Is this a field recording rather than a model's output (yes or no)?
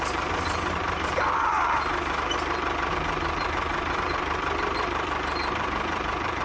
no